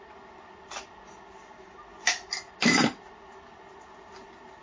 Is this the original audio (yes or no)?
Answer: yes